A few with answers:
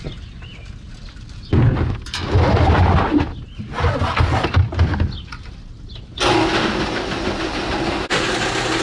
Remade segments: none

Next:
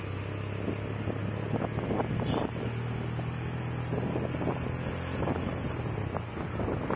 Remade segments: none

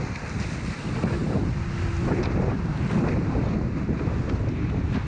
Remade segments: none

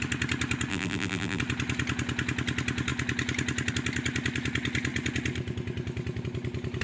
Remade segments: 0.7-1.4

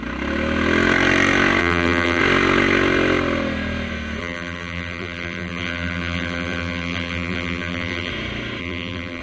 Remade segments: 1.6-2.2; 4.2-8.1; 8.6-9.2

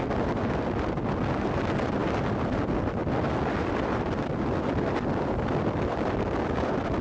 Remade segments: none